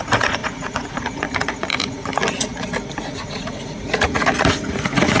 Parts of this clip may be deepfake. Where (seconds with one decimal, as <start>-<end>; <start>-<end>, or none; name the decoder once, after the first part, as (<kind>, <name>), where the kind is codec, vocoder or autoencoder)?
0.0-2.1 (vocoder, Vocos); 3.0-5.2